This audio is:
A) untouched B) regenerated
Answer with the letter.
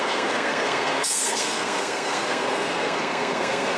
B